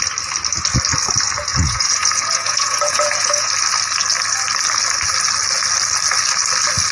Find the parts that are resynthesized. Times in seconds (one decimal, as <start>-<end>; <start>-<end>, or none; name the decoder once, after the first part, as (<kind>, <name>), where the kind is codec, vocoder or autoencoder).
1.5-3.5 (vocoder, Vocos)